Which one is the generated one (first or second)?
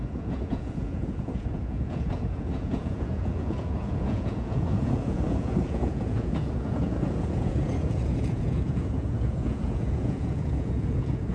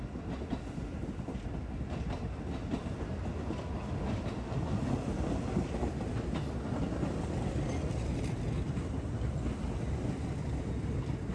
first